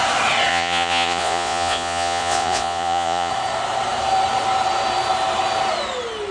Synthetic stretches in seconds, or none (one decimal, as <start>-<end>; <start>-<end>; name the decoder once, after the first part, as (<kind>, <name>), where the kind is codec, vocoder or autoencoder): 0.5-3.3 (vocoder, Vocos)